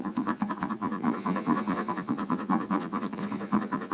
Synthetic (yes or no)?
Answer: yes